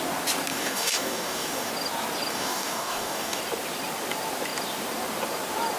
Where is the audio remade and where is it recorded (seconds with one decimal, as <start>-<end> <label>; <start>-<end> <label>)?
0.0-0.5 recorded; 0.5-1.7 remade; 1.7-2.3 recorded; 2.3-3.4 remade; 3.4-5.8 recorded